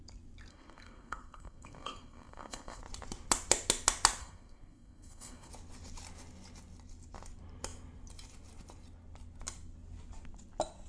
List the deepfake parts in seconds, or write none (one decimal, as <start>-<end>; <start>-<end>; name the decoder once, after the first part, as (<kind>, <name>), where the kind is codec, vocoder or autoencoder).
0.5-2.8 (codec, SNAC); 4.2-5.5